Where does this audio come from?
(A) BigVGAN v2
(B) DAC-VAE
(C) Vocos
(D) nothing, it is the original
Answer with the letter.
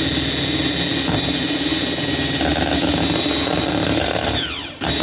D